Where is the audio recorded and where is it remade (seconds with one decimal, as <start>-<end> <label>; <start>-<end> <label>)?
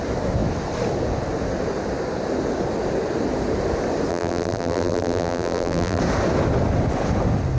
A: 0.0-4.1 recorded; 4.1-6.0 remade; 6.0-7.6 recorded